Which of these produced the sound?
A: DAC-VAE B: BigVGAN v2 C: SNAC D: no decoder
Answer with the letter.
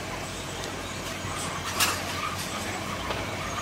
D